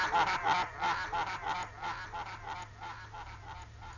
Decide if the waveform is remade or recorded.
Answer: recorded